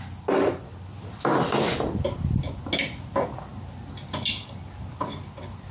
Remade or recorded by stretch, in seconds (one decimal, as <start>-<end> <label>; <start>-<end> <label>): 0.0-5.7 recorded